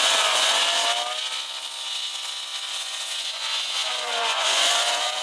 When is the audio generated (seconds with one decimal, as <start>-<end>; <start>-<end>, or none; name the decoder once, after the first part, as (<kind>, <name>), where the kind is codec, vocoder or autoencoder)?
0.0-0.6 (vocoder, Vocos); 2.7-5.2